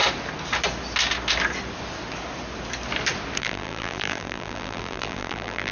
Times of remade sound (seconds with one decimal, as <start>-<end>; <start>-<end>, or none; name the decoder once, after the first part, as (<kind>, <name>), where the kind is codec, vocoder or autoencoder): 3.4-5.7 (vocoder, BigVGAN v2)